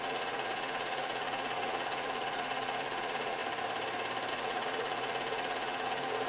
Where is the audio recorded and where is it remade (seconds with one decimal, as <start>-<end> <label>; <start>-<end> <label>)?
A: 0.0-3.4 remade; 3.4-4.3 recorded; 4.3-6.3 remade